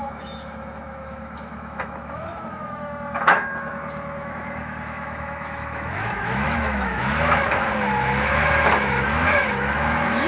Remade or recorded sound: remade